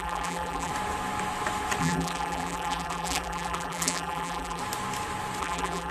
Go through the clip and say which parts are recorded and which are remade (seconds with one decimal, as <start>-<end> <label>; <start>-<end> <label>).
0.0-0.7 remade; 0.7-1.8 recorded; 1.8-4.6 remade; 4.6-5.4 recorded; 5.4-5.9 remade